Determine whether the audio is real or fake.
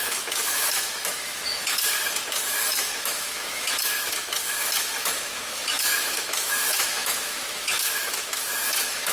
fake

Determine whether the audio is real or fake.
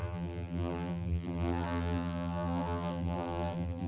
fake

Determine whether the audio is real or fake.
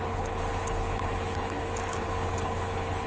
fake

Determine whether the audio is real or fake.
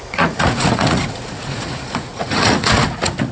fake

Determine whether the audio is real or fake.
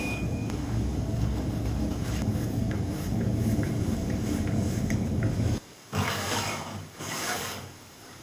fake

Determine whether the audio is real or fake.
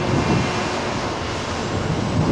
real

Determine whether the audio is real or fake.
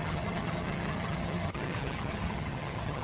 fake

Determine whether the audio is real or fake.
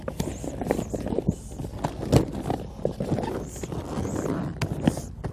real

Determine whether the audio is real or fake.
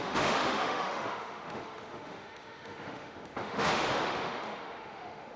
fake